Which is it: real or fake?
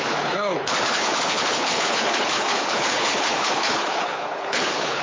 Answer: fake